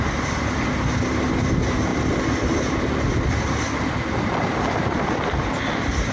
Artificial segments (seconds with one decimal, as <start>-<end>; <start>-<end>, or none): none